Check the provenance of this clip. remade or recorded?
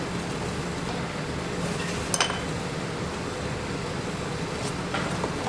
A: recorded